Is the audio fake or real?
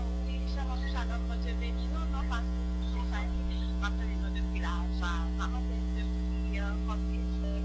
real